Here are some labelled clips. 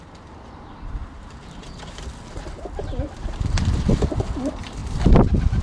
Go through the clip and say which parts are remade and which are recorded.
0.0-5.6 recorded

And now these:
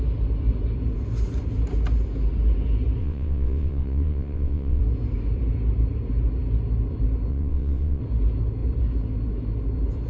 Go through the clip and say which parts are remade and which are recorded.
0.0-3.0 recorded; 3.0-4.8 remade; 4.8-7.3 recorded; 7.3-8.0 remade; 8.0-10.1 recorded

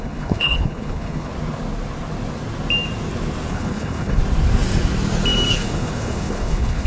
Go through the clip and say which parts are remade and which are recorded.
0.0-1.3 remade; 1.3-3.5 recorded; 3.5-4.2 remade; 4.2-5.5 recorded; 5.5-6.9 remade

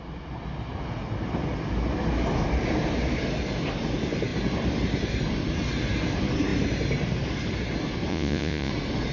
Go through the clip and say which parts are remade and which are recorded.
0.0-8.1 recorded; 8.1-8.7 remade; 8.7-9.1 recorded

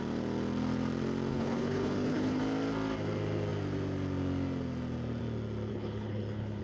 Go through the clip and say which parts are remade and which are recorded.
0.0-1.3 recorded; 1.3-2.4 remade; 2.4-5.7 recorded; 5.7-6.6 remade

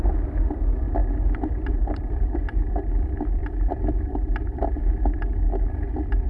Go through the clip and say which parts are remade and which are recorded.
0.0-1.0 recorded; 1.0-2.6 remade; 2.6-3.4 recorded; 3.4-4.8 remade; 4.8-6.3 recorded

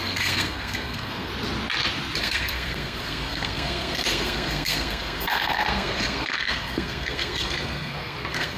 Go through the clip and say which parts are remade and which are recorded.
0.0-1.3 remade; 1.3-2.2 recorded; 2.2-8.6 remade